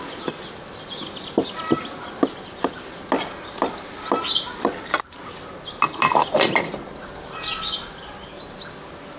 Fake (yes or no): no